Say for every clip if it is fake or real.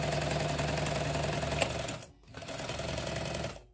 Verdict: real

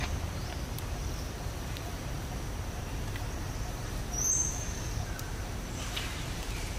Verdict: fake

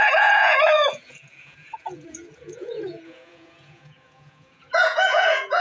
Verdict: fake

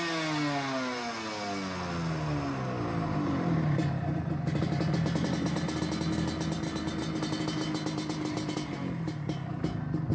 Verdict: real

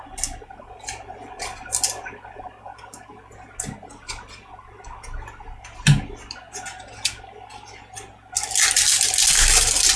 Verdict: real